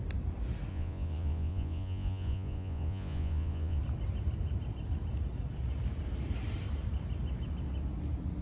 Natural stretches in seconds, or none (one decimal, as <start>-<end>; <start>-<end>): 0.0-0.7; 3.8-8.4